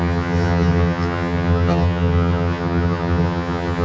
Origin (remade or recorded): remade